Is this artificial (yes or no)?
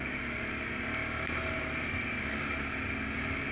no